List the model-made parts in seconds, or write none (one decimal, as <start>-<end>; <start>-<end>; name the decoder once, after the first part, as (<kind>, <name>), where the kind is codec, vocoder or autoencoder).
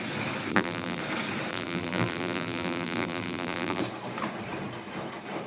0.5-1.0 (vocoder, BigVGAN v2); 1.5-3.8